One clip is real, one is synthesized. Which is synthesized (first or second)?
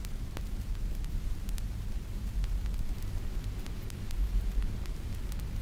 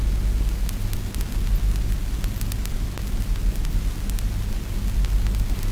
first